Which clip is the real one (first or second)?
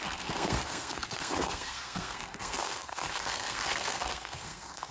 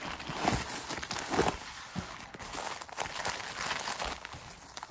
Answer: second